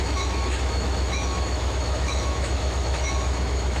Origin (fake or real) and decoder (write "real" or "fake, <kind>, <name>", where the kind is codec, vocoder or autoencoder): fake, autoencoder, DAC-VAE